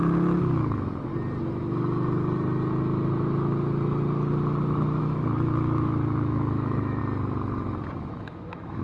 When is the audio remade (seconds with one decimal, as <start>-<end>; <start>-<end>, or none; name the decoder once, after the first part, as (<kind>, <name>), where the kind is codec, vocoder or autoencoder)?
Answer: 0.0-1.1 (autoencoder, DAC-VAE); 5.0-7.0; 8.0-8.8

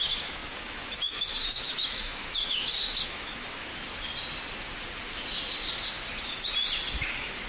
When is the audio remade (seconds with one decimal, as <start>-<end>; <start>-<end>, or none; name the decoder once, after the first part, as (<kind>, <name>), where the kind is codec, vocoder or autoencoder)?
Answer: 0.0-3.7 (autoencoder, DAC-VAE); 7.0-7.5

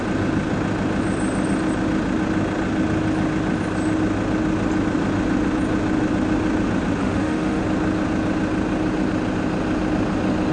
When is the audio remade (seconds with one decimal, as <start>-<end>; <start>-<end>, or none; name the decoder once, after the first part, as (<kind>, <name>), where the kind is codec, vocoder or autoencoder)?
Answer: 7.0-7.6 (autoencoder, DAC-VAE)

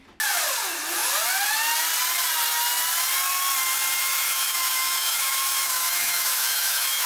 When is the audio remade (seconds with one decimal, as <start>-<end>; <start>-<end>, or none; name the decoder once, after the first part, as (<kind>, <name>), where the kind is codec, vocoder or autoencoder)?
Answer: 4.0-7.1 (autoencoder, DAC-VAE)